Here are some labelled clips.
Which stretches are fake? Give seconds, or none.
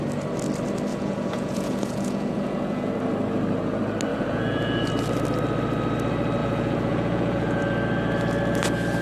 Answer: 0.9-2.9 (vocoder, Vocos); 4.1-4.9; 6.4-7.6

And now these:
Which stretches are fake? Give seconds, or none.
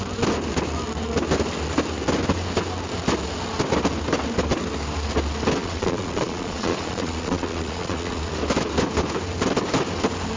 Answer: 5.6-8.3 (vocoder, Vocos)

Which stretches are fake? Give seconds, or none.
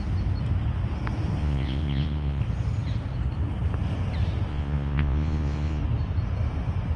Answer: 1.4-2.4 (vocoder, Vocos); 4.5-5.8